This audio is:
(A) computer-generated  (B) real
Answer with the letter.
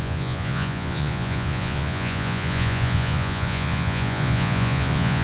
A